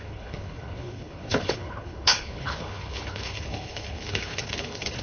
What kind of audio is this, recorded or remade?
remade